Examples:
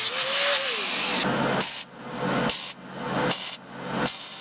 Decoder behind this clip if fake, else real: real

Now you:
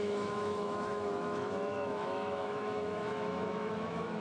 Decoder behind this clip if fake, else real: fake, autoencoder, DAC-VAE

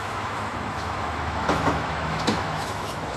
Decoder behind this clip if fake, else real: fake, autoencoder, DAC-VAE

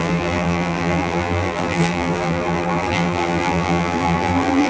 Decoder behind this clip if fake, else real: fake, vocoder, BigVGAN v2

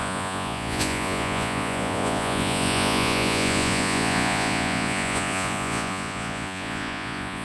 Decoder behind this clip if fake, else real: fake, vocoder, Vocos